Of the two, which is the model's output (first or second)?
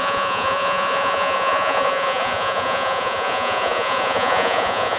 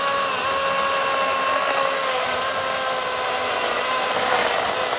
first